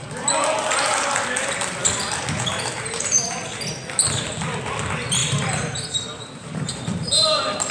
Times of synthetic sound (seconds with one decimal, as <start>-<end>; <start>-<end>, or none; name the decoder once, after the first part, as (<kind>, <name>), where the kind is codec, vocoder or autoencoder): 5.2-6.7 (vocoder, BigVGAN v2)